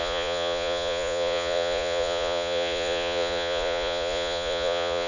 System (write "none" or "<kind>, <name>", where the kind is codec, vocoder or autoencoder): vocoder, Vocos